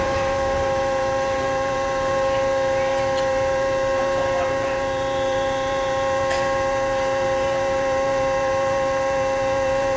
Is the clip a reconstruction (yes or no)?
yes